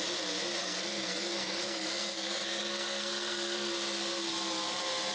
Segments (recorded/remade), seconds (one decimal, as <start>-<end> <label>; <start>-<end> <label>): 0.0-0.6 recorded; 0.6-3.7 remade; 3.7-5.1 recorded